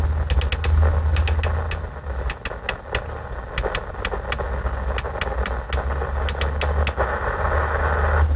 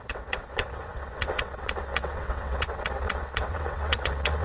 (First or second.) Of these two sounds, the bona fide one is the first